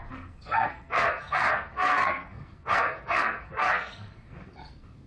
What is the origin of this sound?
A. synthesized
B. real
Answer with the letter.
A